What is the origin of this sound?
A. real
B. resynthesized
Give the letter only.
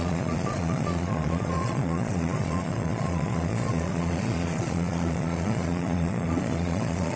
B